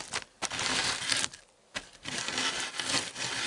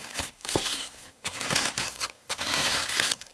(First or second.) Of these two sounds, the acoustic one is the first